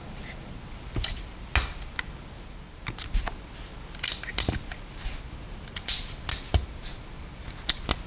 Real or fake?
real